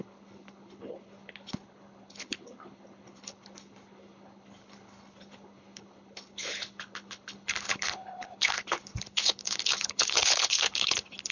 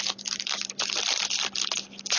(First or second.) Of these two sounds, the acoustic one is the second